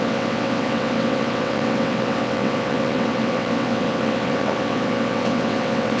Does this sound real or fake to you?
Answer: fake